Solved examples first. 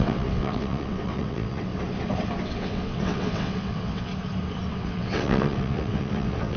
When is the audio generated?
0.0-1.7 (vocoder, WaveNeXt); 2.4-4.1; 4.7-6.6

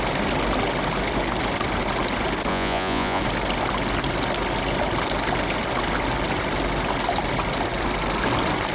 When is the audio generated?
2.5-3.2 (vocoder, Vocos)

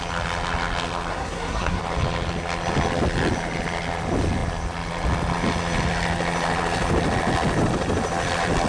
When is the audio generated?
1.1-1.8 (codec, SNAC)

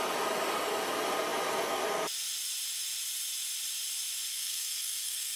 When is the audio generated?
4.3-5.4 (codec, SNAC)